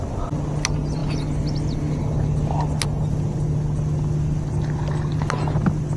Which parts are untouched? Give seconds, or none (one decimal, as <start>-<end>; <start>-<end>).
0.0-6.0